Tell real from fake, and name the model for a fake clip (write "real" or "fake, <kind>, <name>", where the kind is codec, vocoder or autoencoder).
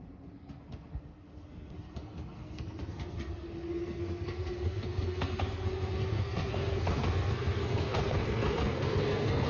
fake, codec, SNAC